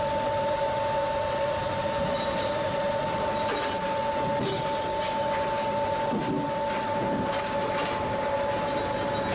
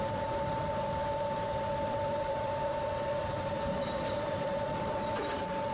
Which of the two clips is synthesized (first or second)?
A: second